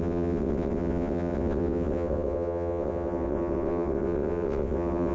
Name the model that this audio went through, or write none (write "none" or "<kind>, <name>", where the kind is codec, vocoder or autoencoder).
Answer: vocoder, WaveNeXt